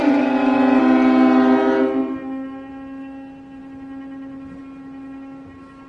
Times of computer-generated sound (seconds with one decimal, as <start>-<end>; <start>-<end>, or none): none